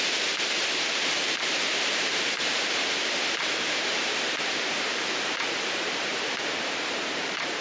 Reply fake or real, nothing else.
fake